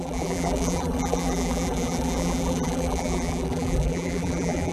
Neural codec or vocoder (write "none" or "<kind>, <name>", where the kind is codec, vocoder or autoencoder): vocoder, BigVGAN v2